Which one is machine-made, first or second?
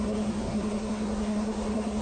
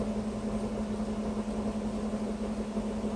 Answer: first